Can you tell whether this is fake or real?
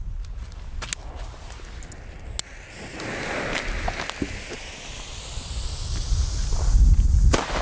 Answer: real